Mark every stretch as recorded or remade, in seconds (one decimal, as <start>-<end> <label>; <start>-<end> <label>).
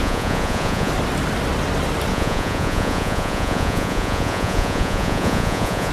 0.0-0.9 remade; 0.9-2.1 recorded; 2.1-5.9 remade